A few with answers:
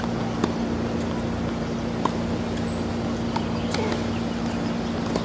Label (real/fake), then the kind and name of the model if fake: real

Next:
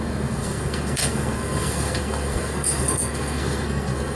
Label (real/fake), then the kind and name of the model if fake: fake, codec, SNAC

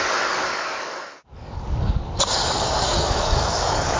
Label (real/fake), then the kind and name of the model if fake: fake, codec, DAC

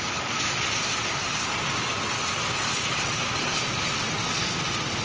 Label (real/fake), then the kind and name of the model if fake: real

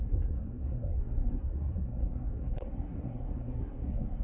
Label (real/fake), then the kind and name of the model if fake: fake, codec, SNAC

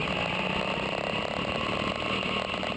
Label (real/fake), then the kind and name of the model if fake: real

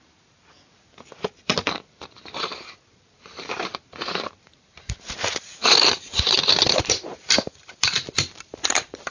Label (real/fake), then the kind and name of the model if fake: fake, vocoder, BigVGAN v2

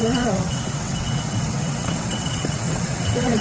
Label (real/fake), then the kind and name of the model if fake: fake, vocoder, WaveNeXt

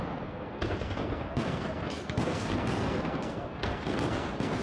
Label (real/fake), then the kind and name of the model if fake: fake, codec, SNAC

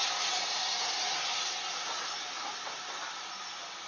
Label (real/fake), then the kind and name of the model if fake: real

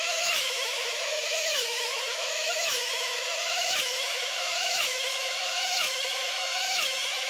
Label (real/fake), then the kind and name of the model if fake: fake, autoencoder, DAC-VAE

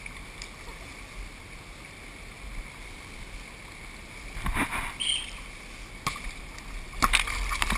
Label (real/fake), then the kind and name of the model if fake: real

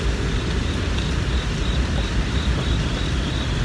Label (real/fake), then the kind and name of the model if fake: real